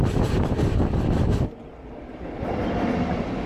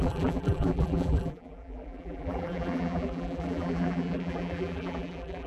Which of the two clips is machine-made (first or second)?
second